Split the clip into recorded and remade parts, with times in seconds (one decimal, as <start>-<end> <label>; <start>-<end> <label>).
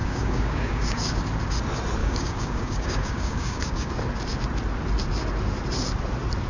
0.0-1.1 remade; 1.1-2.0 recorded; 2.0-3.9 remade; 3.9-6.5 recorded